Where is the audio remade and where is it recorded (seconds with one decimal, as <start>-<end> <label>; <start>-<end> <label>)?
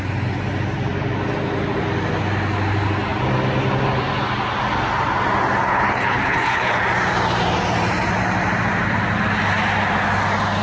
0.0-5.7 recorded; 5.7-6.8 remade; 6.8-10.6 recorded